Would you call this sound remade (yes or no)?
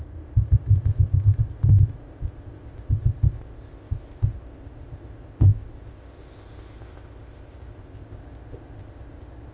yes